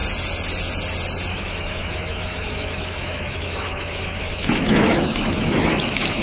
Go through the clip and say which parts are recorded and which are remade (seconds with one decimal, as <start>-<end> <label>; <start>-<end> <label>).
0.0-1.3 recorded; 1.3-6.2 remade